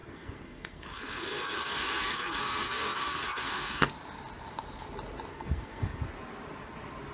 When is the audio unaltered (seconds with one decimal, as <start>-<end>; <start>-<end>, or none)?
3.9-5.3; 6.0-7.1